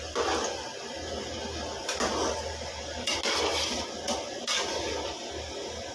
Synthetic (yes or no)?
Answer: no